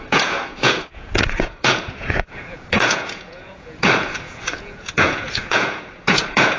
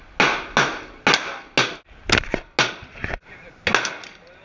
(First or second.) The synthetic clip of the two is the first